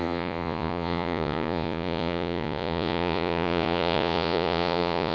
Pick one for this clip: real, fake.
fake